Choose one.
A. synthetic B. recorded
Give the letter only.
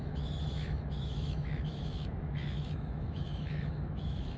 A